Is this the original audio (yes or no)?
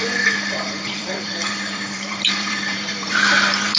no